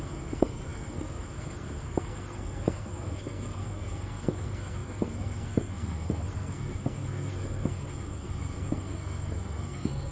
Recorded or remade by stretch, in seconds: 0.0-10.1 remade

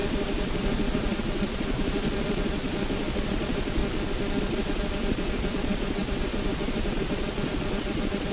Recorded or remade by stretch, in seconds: 0.0-3.8 remade; 3.8-4.4 recorded; 4.4-8.3 remade

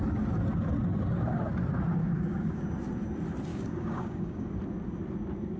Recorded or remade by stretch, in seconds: 0.0-2.0 recorded; 2.0-2.6 remade; 2.6-3.5 recorded; 3.5-4.5 remade; 4.5-5.6 recorded

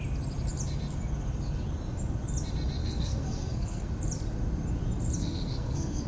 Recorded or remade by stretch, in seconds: 0.0-2.8 recorded; 2.8-3.9 remade; 3.9-5.2 recorded; 5.2-6.1 remade

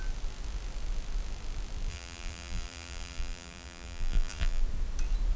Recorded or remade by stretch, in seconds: 0.0-1.9 recorded; 1.9-4.6 remade; 4.6-5.4 recorded

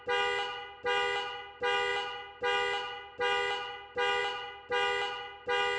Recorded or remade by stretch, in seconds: 0.0-5.8 recorded